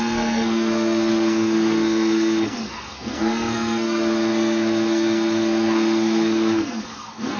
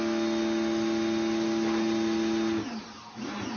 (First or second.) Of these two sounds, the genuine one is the second